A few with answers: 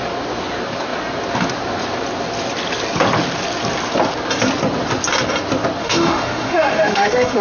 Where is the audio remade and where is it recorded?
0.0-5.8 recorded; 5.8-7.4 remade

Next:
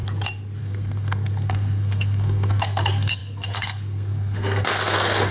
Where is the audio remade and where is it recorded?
0.0-0.6 recorded; 0.6-5.3 remade

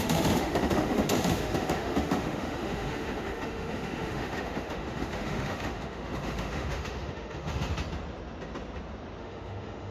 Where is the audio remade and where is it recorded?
0.0-7.7 remade; 7.7-9.2 recorded; 9.2-9.9 remade

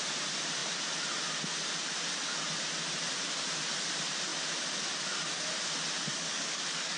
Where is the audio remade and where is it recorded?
0.0-6.1 recorded; 6.1-7.0 remade